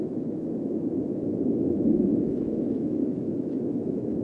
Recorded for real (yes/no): no